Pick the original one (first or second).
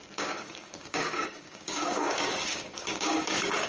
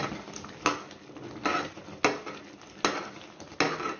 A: second